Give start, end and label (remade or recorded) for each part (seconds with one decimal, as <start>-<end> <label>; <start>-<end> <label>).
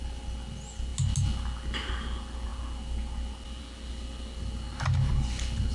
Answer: 0.0-5.7 recorded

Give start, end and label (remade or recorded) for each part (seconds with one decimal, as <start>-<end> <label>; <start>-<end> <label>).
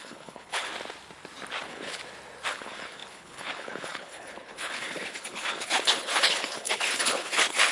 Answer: 0.0-0.7 remade; 0.7-1.6 recorded; 1.6-2.0 remade; 2.0-2.5 recorded; 2.5-7.7 remade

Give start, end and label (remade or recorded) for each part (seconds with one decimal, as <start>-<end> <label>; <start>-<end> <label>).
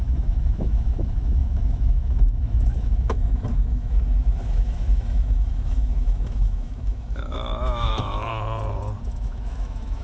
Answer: 0.0-8.3 remade; 8.3-9.0 recorded; 9.0-10.0 remade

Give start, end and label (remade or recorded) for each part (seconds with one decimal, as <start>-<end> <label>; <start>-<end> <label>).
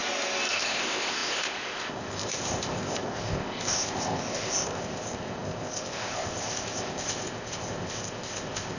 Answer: 0.0-0.5 recorded; 0.5-8.8 remade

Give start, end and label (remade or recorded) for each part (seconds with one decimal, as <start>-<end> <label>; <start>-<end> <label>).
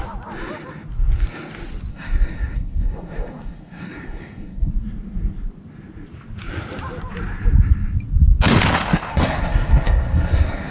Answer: 0.0-1.9 recorded; 1.9-4.7 remade; 4.7-9.1 recorded; 9.1-10.7 remade